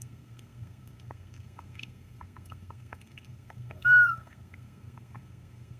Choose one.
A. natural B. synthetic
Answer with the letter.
B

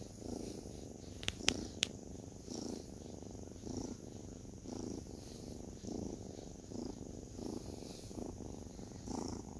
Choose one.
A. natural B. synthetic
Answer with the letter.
B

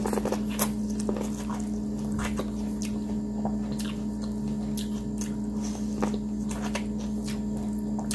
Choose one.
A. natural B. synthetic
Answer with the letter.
A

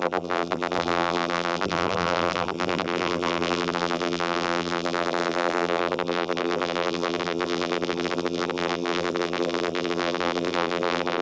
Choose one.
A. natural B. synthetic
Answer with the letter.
B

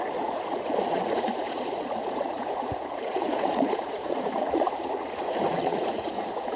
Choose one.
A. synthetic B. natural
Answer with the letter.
A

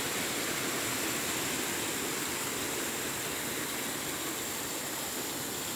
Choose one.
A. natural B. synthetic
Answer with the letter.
A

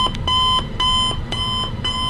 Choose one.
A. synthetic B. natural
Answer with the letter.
B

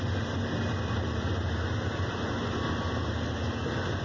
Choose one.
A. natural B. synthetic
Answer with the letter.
A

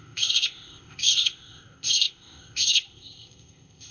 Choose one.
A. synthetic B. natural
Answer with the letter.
A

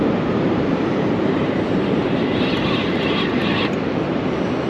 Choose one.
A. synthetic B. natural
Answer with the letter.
A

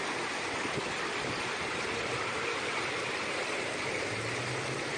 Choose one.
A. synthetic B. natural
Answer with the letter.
B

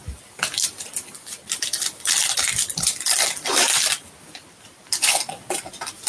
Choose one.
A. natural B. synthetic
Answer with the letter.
B